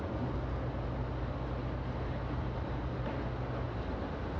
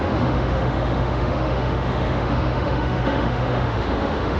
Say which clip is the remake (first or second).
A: second